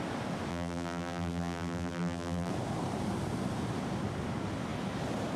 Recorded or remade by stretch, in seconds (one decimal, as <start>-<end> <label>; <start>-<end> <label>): 0.0-0.5 recorded; 0.5-2.5 remade; 2.5-5.4 recorded